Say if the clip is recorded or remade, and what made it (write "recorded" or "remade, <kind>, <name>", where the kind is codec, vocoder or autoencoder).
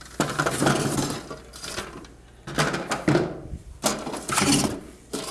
recorded